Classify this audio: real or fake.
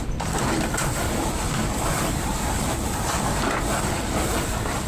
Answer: fake